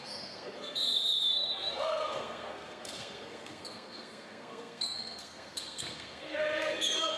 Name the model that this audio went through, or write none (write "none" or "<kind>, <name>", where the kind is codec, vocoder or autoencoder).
codec, SNAC